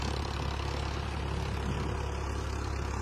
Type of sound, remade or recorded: recorded